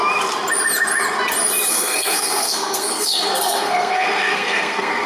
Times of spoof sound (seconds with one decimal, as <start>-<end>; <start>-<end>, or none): 1.7-5.1